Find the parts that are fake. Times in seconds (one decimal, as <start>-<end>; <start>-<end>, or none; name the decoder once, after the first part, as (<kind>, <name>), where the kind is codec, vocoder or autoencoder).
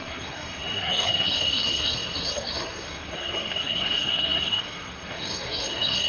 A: 0.0-6.1 (codec, SNAC)